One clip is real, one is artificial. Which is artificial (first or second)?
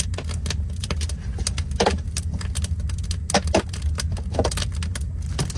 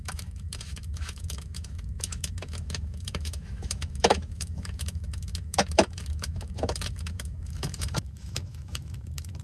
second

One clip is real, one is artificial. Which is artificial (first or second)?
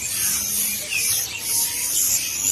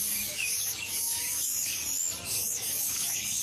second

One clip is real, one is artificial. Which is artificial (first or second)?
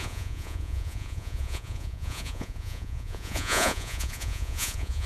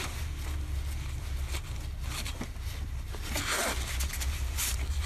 first